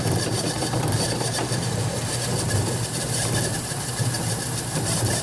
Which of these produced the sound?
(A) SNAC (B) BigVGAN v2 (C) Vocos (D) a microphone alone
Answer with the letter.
B